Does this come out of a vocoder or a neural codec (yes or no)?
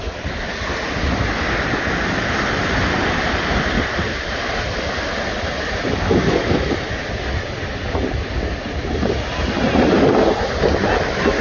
no